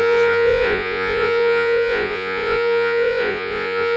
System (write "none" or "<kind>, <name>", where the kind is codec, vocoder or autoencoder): vocoder, Vocos